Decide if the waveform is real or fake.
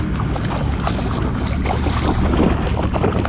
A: real